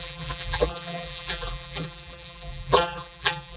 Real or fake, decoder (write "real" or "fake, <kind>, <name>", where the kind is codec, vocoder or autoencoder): fake, vocoder, BigVGAN v2